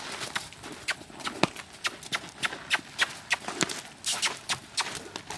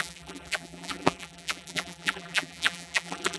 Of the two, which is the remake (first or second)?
second